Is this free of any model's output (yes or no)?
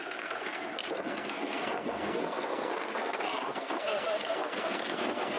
no